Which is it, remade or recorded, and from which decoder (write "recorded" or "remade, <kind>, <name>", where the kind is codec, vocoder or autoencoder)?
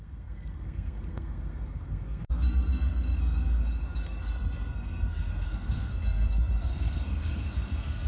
remade, codec, SNAC